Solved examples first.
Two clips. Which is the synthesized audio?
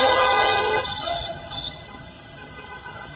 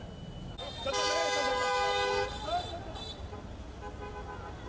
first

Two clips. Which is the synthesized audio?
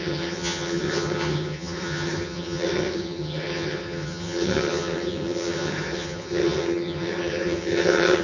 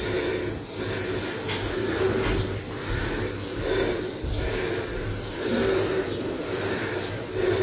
first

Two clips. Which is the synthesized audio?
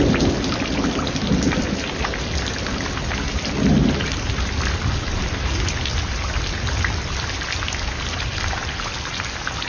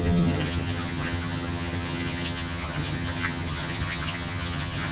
second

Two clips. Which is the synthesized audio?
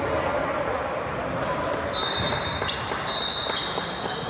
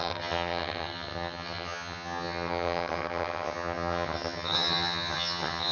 second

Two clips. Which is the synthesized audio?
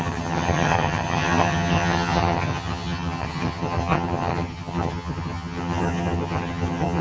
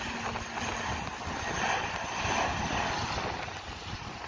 first